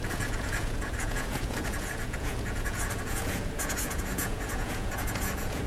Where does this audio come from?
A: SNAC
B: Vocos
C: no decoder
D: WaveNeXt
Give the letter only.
B